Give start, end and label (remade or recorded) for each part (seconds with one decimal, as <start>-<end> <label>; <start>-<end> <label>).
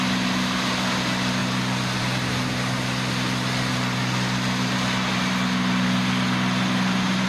0.0-7.3 recorded